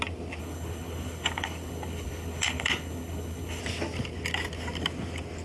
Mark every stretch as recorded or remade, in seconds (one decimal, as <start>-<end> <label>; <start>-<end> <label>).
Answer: 0.0-0.4 recorded; 0.4-3.6 remade; 3.6-5.4 recorded